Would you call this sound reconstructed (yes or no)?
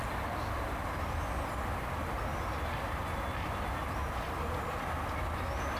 no